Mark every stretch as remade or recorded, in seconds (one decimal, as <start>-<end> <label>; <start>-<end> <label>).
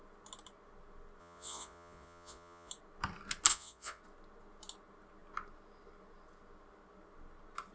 0.0-1.2 recorded; 1.2-2.7 remade; 2.7-3.5 recorded; 3.5-4.0 remade; 4.0-7.7 recorded